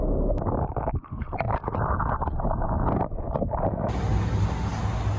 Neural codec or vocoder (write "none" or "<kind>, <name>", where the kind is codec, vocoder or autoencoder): none